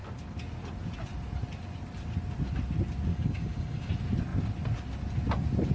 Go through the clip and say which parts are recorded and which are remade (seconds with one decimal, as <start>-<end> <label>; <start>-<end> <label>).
0.0-3.1 recorded; 3.1-3.9 remade; 3.9-5.7 recorded